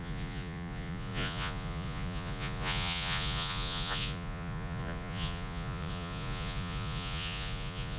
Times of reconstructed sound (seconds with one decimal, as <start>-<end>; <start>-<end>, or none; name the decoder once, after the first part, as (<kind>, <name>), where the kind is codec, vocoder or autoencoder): 0.0-8.0 (vocoder, Vocos)